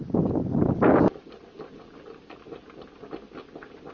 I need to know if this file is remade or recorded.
recorded